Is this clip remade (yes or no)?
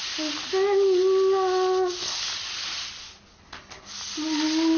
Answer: no